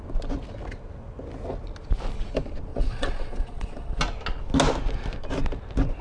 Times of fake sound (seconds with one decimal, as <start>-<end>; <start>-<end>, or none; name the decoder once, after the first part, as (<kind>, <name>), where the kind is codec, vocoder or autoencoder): 2.7-4.0 (vocoder, Vocos)